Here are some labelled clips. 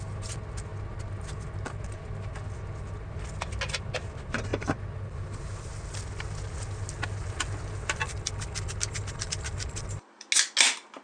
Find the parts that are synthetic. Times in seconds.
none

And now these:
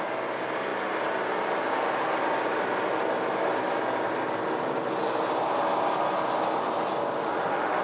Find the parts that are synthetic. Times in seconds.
7.2-7.8 (autoencoder, DAC-VAE)

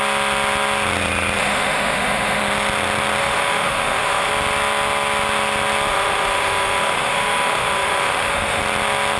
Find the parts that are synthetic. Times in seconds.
1.4-2.4 (autoencoder, DAC-VAE); 3.2-4.3; 5.9-8.6

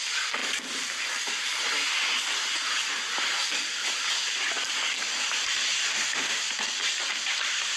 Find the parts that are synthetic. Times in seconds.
5.9-6.4 (autoencoder, DAC-VAE)